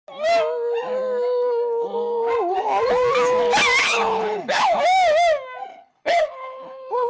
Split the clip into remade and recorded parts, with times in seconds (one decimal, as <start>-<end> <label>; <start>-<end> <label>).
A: 0.0-3.8 recorded; 3.8-4.8 remade; 4.8-5.7 recorded; 5.7-7.1 remade